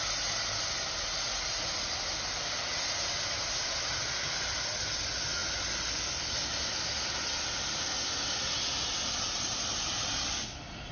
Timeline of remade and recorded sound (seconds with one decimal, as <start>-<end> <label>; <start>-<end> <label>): 0.0-10.9 recorded